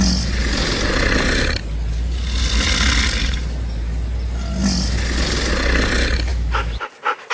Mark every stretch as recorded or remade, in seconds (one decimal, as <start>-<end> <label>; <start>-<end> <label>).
0.0-6.3 recorded; 6.3-6.8 remade; 6.8-7.3 recorded